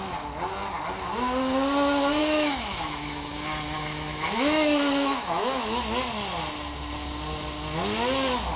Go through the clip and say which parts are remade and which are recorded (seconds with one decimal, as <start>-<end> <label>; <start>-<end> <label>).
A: 0.0-2.2 recorded; 2.2-5.8 remade; 5.8-8.6 recorded